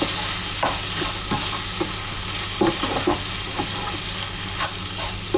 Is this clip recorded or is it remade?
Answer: recorded